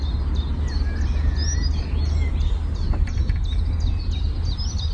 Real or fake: real